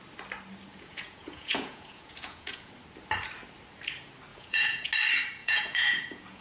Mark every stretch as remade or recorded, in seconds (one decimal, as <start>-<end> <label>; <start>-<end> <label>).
0.0-0.7 recorded; 0.7-2.7 remade; 2.7-4.3 recorded; 4.3-4.9 remade; 4.9-5.4 recorded; 5.4-6.4 remade